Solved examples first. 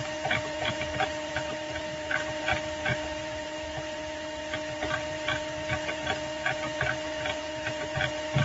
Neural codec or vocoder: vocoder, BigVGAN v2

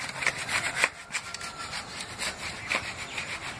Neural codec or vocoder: vocoder, BigVGAN v2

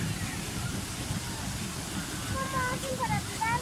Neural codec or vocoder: none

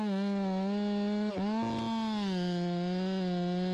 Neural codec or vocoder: none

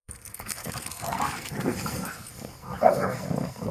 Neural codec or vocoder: codec, SNAC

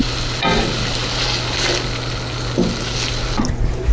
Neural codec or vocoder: none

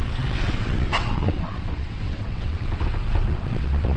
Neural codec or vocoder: vocoder, WaveNeXt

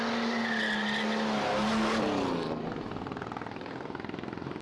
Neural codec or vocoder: none